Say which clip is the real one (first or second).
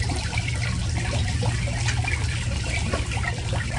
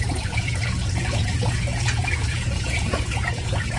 first